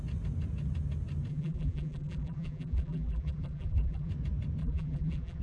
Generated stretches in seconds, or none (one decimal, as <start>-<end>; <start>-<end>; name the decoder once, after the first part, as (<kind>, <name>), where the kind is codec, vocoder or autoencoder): 1.3-4.1 (vocoder, BigVGAN v2); 4.6-5.4